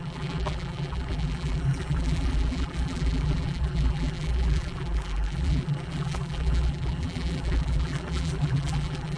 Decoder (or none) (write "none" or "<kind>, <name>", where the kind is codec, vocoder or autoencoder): vocoder, BigVGAN v2